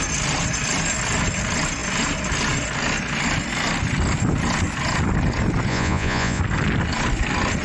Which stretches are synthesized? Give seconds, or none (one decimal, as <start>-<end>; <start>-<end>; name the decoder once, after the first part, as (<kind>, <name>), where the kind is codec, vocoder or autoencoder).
5.7-6.4 (vocoder, Vocos)